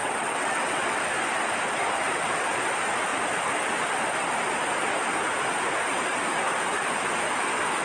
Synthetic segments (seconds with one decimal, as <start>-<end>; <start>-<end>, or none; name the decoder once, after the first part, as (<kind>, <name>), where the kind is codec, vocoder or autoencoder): 0.0-1.1 (vocoder, WaveNeXt)